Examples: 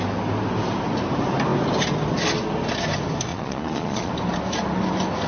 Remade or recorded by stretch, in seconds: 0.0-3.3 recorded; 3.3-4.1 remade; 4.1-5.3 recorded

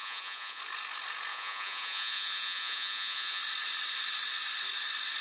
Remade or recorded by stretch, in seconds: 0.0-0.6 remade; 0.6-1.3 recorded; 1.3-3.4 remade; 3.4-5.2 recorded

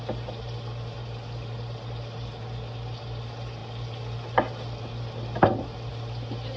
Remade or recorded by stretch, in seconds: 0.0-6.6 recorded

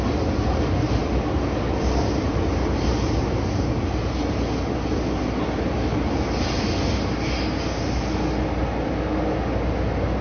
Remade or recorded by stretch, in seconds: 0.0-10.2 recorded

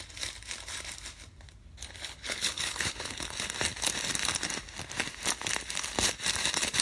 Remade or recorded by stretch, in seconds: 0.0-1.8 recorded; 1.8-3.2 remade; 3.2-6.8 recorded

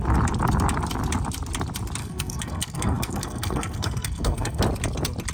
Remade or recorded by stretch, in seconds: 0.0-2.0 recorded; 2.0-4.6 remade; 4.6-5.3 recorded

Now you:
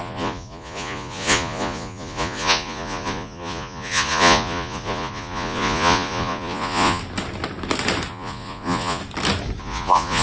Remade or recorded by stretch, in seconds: 0.0-7.0 remade; 7.0-8.1 recorded; 8.1-9.0 remade; 9.0-9.6 recorded; 9.6-10.2 remade